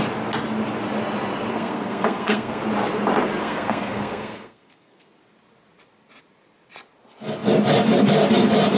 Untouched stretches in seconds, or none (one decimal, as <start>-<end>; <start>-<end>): 0.0-1.5; 2.6-3.4; 5.1-8.8